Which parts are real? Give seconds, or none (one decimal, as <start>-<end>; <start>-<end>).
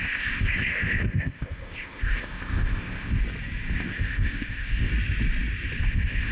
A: 3.2-3.7; 4.9-5.8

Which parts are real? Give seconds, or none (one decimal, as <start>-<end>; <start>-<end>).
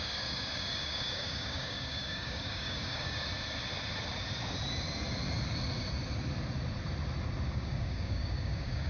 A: 3.3-7.5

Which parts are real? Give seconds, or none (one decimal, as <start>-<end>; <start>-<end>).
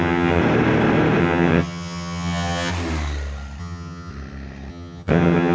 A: 0.4-1.2; 2.7-3.6; 4.1-4.7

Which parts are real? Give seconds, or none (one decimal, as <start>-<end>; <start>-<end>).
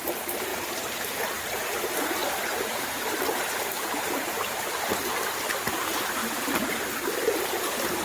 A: 0.0-2.2; 5.1-8.0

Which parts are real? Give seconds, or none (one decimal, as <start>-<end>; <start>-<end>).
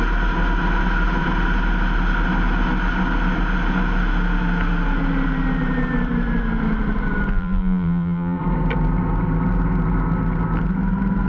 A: 0.0-7.3; 8.4-11.3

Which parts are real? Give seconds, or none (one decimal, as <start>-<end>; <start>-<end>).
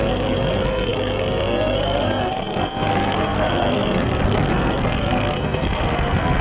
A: none